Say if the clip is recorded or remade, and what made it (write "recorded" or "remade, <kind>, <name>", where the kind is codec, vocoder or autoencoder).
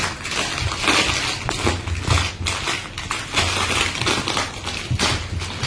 recorded